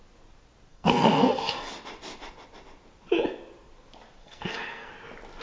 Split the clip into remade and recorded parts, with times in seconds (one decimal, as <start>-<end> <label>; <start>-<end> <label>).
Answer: 0.0-0.7 recorded; 0.7-1.7 remade; 1.7-4.2 recorded; 4.2-4.9 remade; 4.9-5.4 recorded